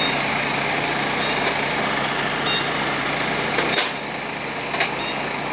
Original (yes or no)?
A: yes